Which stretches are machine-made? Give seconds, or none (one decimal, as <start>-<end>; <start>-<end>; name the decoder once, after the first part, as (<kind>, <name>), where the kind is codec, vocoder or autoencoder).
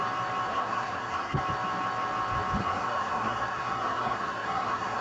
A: 0.5-1.4 (codec, SNAC); 2.6-5.0